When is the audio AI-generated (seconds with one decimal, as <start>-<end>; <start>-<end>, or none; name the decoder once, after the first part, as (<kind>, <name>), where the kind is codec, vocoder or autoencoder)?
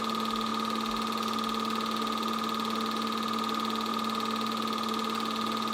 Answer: none